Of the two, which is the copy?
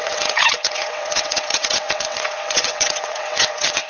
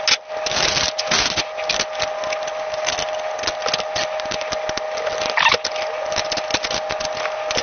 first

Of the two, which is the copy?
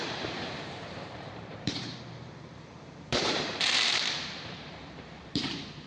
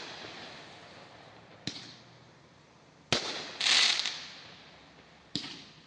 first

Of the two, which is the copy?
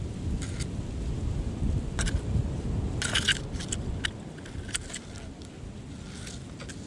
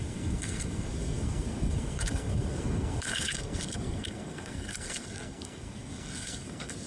second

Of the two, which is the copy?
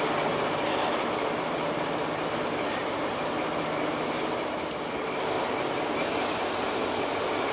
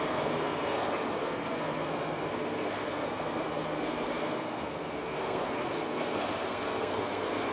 second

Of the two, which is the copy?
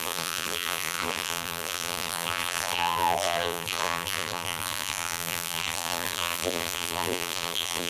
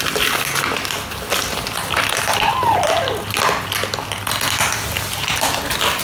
first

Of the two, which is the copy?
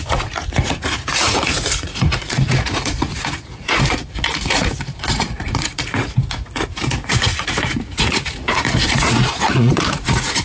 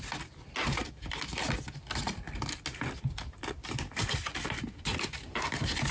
first